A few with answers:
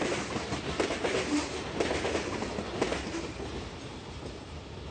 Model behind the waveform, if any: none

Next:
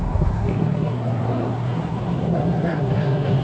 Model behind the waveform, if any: codec, SNAC